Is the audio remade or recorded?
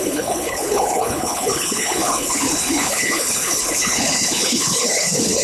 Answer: remade